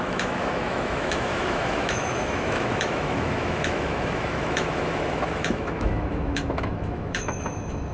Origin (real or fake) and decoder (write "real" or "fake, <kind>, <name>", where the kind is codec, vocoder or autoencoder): fake, autoencoder, DAC-VAE